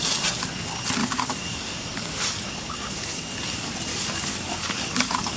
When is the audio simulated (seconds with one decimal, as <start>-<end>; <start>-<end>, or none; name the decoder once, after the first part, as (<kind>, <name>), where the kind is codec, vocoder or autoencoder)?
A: 1.0-3.2 (codec, DAC); 3.9-5.4